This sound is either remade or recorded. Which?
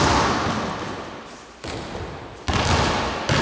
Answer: recorded